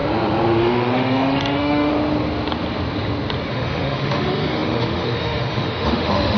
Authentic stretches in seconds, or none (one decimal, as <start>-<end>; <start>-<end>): 0.0-0.6; 1.9-3.5